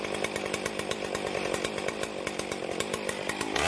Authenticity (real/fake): real